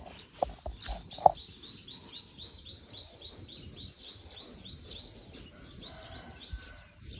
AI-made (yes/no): no